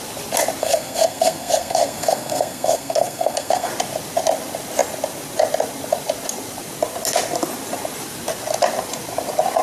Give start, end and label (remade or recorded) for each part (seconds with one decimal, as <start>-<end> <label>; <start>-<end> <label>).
0.0-0.6 recorded; 0.6-3.7 remade; 3.7-9.6 recorded